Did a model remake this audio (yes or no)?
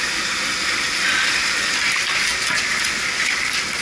yes